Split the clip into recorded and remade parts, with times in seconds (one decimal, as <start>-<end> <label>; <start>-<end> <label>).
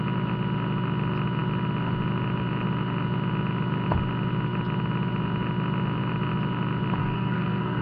0.0-7.0 recorded; 7.0-7.8 remade